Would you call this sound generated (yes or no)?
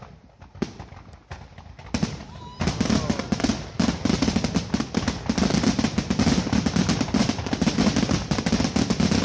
no